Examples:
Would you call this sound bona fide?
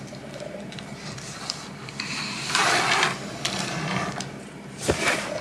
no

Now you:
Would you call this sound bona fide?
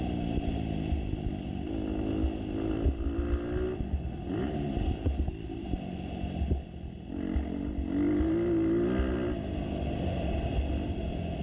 yes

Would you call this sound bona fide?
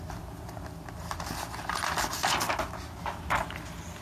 yes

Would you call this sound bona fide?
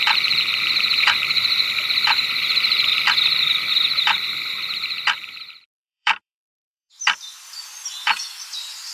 no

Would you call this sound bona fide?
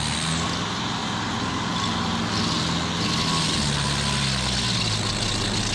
yes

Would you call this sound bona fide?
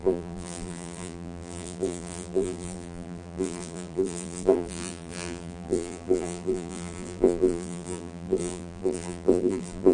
no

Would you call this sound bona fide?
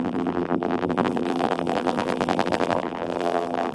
no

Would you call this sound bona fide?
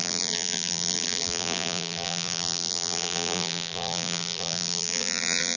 no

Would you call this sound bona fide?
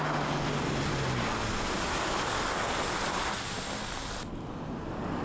yes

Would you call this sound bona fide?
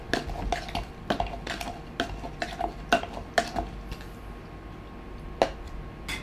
yes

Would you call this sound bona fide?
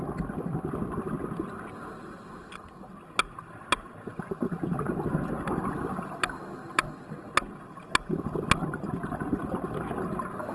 yes